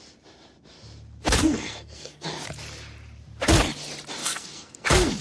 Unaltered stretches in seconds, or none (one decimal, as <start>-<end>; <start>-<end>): 0.0-1.4; 2.3-4.2